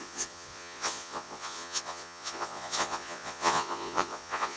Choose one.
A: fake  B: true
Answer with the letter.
A